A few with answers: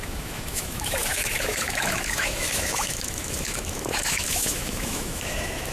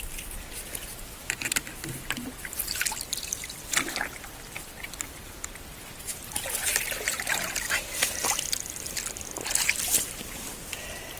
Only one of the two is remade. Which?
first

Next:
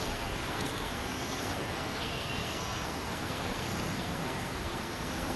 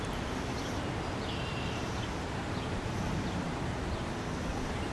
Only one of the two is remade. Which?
first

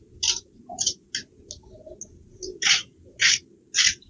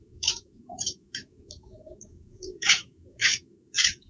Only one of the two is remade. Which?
second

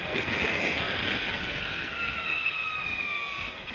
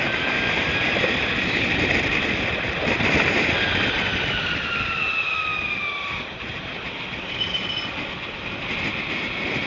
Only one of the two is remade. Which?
first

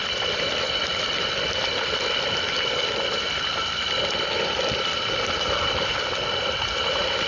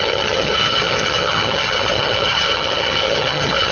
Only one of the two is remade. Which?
second